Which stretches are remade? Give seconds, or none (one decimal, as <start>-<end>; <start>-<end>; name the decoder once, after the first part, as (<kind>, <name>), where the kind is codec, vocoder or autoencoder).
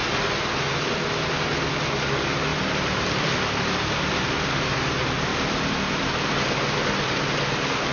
2.5-3.4 (vocoder, BigVGAN v2); 5.3-7.4